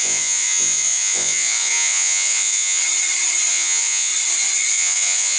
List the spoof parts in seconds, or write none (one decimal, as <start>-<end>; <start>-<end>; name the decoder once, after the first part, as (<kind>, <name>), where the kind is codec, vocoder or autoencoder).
0.0-2.8 (vocoder, Vocos); 3.5-4.1; 4.7-5.4